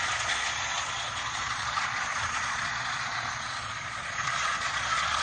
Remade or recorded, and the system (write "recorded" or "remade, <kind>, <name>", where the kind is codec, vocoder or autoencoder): remade, vocoder, Vocos